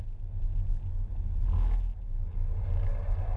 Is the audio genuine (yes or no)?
yes